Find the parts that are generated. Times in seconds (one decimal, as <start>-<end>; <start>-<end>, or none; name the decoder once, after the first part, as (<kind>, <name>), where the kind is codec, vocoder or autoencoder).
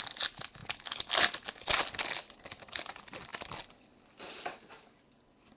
none